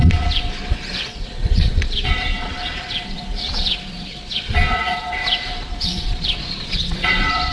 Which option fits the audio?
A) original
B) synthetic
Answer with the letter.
B